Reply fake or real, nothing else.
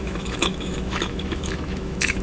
fake